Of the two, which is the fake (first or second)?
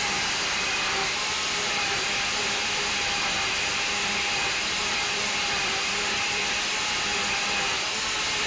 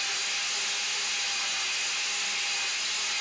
first